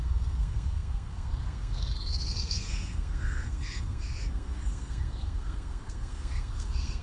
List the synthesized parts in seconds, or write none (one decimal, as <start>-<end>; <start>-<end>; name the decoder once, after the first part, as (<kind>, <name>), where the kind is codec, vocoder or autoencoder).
0.0-7.0 (codec, SNAC)